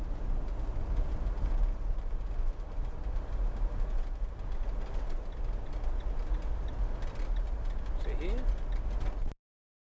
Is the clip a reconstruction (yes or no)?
no